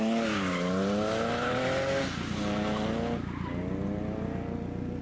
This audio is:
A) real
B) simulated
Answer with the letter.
A